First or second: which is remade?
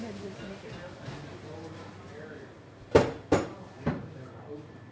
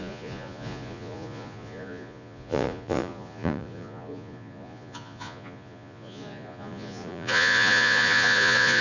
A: second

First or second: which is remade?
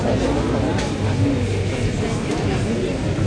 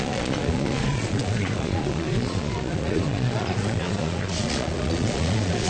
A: second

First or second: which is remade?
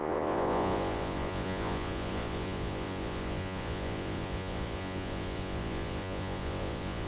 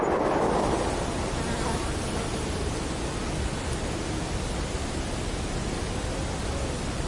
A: first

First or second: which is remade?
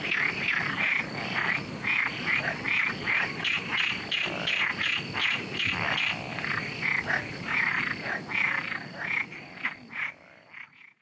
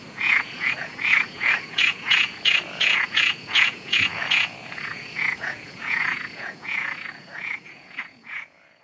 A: second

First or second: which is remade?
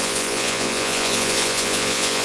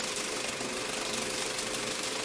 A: first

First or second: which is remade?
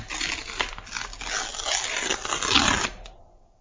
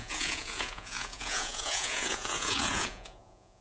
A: second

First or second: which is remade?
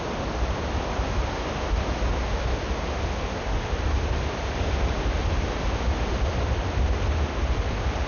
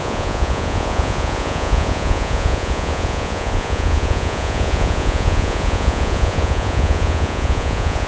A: second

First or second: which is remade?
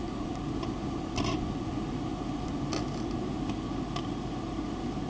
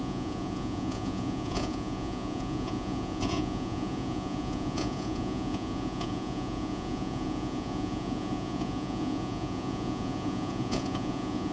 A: second